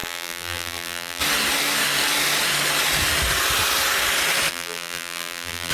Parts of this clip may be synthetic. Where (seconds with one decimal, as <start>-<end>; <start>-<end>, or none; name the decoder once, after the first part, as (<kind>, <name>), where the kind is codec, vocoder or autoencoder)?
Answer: 0.0-1.2 (vocoder, BigVGAN v2); 4.5-5.7